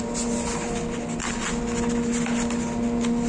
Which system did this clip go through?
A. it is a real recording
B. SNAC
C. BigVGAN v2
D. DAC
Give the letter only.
A